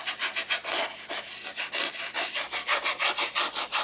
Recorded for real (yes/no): yes